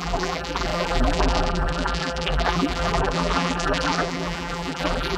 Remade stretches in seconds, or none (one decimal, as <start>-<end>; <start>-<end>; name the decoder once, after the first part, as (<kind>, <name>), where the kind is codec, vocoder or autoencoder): 0.0-5.2 (vocoder, BigVGAN v2)